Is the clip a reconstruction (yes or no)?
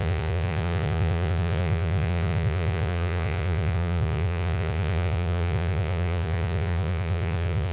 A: yes